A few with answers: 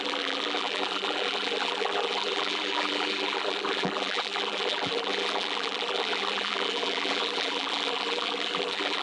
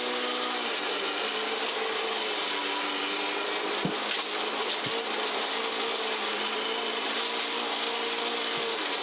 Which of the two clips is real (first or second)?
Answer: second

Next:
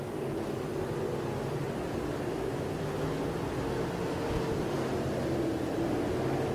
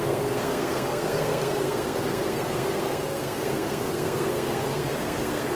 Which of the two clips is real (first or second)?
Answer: first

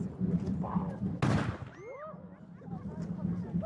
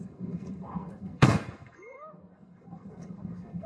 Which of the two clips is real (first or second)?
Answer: first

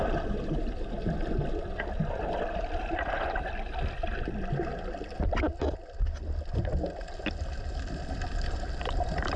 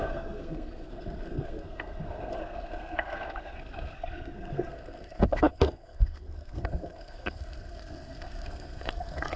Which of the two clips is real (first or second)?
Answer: first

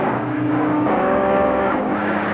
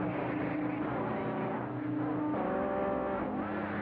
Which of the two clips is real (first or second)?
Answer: second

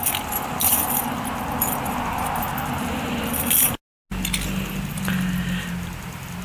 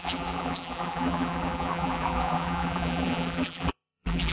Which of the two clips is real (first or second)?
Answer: first